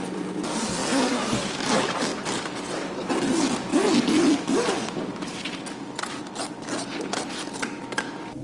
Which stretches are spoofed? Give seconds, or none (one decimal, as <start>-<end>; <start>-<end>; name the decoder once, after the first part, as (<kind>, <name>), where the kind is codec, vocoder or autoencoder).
none